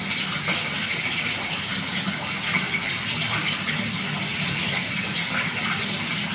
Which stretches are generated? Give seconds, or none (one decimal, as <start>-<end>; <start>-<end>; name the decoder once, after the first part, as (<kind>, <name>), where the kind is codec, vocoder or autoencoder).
none